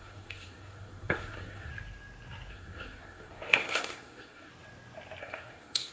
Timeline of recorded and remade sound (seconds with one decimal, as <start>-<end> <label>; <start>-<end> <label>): 0.0-1.7 remade; 1.7-2.5 recorded; 2.5-4.5 remade; 4.5-5.2 recorded; 5.2-5.9 remade